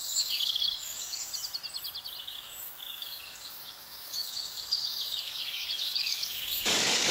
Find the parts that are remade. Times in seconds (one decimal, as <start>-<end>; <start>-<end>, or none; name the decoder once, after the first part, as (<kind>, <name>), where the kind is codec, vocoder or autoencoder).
0.0-1.3 (codec, DAC); 2.2-7.1